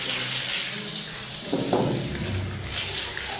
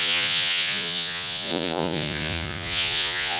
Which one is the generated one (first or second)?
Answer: second